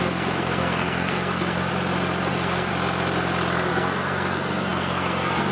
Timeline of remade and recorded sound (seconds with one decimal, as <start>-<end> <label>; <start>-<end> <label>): 0.0-1.7 remade; 1.7-2.3 recorded; 2.3-2.7 remade; 2.7-3.7 recorded; 3.7-5.5 remade